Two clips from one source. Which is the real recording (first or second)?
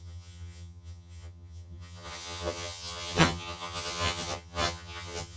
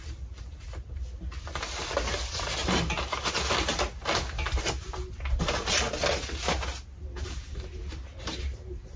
second